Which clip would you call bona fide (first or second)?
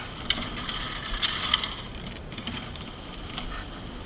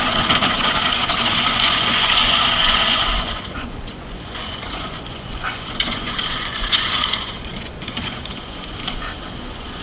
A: first